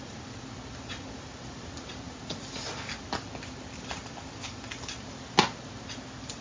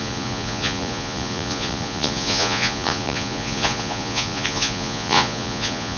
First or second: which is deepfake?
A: second